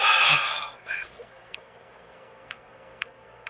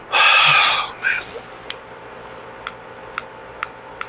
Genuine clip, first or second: second